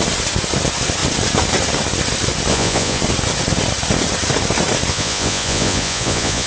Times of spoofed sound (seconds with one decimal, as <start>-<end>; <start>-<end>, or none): 2.5-3.0; 4.9-6.5